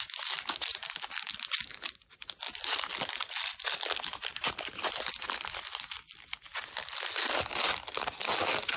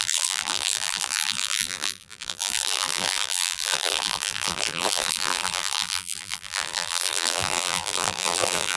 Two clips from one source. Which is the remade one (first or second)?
second